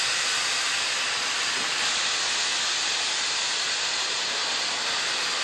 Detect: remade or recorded recorded